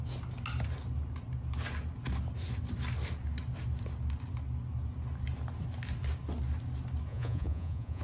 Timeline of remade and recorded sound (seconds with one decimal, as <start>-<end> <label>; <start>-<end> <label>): 0.0-7.1 recorded; 7.1-8.0 remade